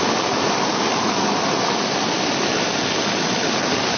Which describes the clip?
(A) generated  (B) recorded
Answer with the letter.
B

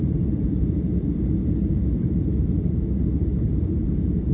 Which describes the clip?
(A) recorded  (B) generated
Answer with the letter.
B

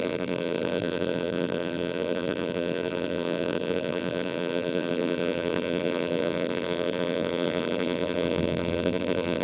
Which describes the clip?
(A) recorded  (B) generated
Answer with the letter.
B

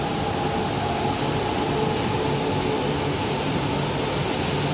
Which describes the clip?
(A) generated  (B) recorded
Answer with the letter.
B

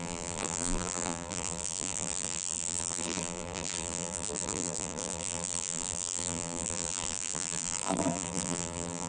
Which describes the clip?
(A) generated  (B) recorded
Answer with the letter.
A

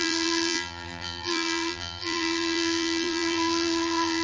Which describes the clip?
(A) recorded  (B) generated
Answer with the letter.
B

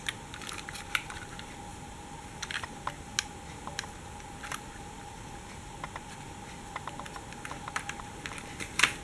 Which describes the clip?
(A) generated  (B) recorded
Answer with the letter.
B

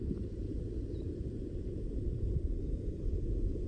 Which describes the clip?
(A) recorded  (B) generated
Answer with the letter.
B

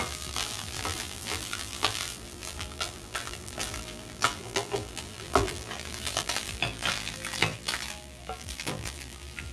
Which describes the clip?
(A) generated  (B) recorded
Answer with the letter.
A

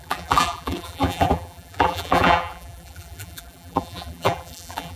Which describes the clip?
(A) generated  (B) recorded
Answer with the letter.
A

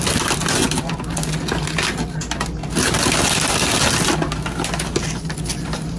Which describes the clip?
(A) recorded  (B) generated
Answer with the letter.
A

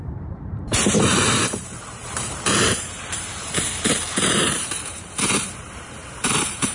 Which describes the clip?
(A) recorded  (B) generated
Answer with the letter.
B